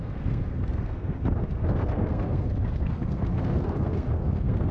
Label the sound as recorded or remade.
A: remade